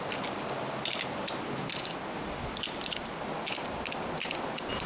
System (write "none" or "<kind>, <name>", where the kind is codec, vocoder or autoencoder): none